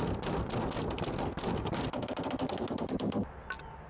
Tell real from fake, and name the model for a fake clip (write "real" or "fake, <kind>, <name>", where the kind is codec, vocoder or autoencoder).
real